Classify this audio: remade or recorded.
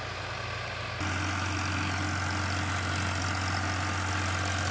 recorded